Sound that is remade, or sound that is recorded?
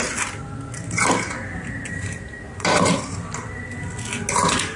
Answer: recorded